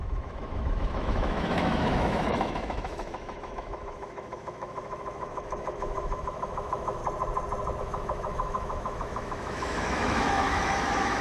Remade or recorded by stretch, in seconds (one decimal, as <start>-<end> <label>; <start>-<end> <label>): 0.0-7.0 remade; 7.0-7.8 recorded; 7.8-11.2 remade